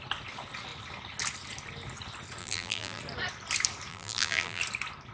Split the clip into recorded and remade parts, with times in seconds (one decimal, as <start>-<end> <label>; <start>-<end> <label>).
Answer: 0.0-2.4 recorded; 2.4-3.0 remade; 3.0-3.9 recorded; 3.9-4.6 remade; 4.6-5.1 recorded